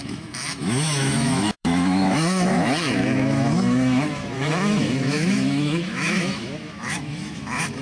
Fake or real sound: fake